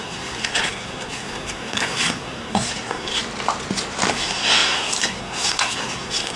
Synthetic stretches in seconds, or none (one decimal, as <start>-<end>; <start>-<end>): 0.0-3.2; 4.1-6.4